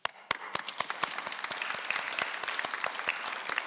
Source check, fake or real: real